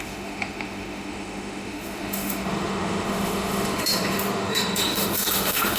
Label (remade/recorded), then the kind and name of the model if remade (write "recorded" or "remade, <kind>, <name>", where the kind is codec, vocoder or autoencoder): remade, autoencoder, DAC-VAE